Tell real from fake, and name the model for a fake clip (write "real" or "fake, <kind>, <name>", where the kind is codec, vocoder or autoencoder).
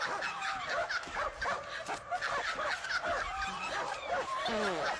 real